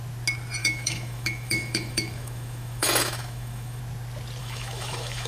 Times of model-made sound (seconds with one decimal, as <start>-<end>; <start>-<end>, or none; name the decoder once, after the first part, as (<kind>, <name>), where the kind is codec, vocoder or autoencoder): 0.6-3.8 (autoencoder, DAC-VAE); 4.4-5.3